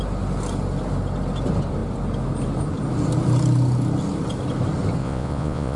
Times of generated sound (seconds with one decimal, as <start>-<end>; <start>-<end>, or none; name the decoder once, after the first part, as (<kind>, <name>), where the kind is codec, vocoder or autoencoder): 5.0-5.8 (vocoder, Vocos)